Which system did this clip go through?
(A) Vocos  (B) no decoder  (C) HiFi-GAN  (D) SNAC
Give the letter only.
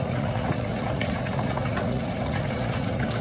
A